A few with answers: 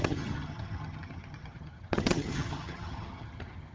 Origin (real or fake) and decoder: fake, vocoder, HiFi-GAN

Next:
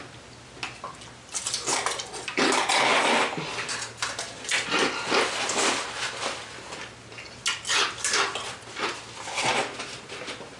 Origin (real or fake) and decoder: real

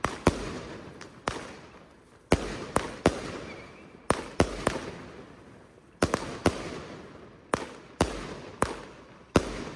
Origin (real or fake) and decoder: real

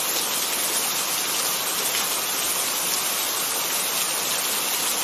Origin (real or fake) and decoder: real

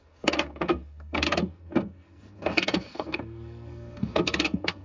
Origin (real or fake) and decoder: fake, codec, SNAC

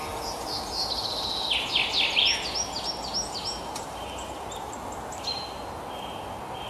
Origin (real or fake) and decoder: real